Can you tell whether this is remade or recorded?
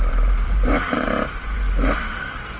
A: remade